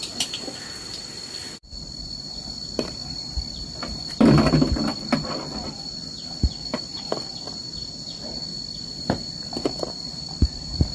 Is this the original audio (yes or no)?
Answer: no